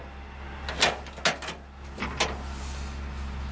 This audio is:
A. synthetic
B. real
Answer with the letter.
B